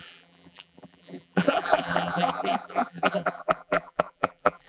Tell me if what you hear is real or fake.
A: fake